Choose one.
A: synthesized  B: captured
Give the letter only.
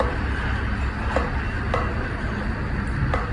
B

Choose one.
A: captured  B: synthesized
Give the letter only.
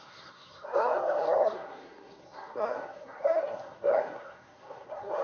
B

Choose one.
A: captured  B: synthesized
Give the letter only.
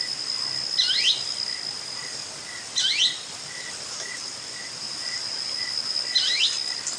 A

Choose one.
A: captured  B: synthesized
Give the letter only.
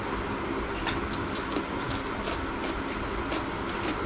A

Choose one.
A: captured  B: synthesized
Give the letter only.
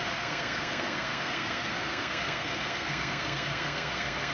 B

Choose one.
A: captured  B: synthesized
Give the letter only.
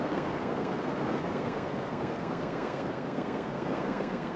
B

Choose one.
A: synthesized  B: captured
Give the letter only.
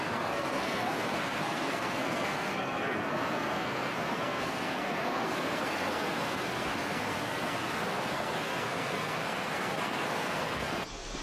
A